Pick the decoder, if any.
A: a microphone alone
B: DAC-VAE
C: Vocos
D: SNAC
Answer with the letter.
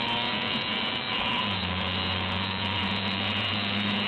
C